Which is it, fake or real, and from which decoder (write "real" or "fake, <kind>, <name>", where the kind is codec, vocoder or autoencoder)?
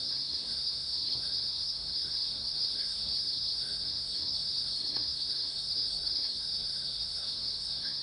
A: fake, codec, SNAC